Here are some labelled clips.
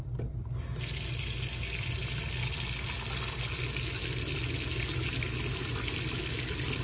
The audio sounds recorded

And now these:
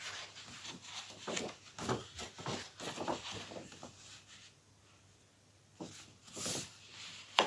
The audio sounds recorded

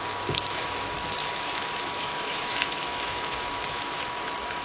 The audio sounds remade